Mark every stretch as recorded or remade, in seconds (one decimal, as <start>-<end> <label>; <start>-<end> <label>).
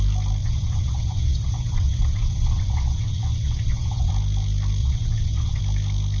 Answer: 0.0-0.4 recorded; 0.4-4.1 remade; 4.1-4.8 recorded; 4.8-5.6 remade; 5.6-6.2 recorded